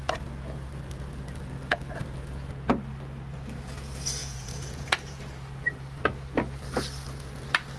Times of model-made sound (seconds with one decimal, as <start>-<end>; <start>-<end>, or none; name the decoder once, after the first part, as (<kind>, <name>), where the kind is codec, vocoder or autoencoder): 4.2-5.2 (vocoder, Vocos)